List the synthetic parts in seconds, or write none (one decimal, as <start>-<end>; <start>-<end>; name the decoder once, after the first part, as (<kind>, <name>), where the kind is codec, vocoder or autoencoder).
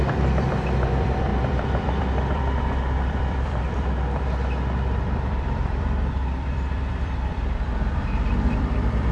0.0-9.1 (vocoder, BigVGAN v2)